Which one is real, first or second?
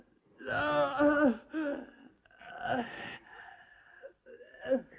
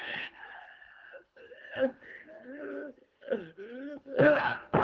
first